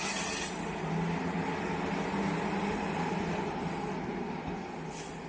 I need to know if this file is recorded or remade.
recorded